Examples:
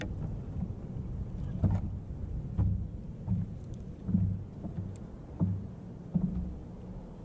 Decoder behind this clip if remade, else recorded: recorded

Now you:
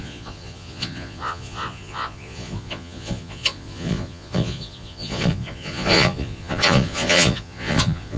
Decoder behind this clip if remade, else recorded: remade, vocoder, Vocos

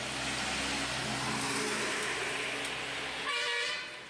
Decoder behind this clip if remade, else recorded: recorded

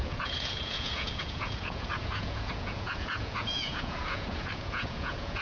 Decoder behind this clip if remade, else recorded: remade, vocoder, Vocos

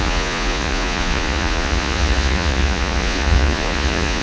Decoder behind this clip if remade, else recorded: remade, vocoder, Vocos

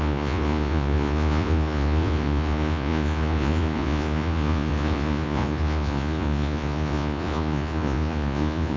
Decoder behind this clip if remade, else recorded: remade, vocoder, Vocos